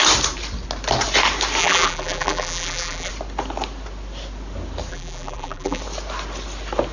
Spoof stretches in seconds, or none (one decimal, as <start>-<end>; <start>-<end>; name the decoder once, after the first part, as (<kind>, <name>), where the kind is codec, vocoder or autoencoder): 1.6-3.1 (vocoder, BigVGAN v2); 4.9-5.8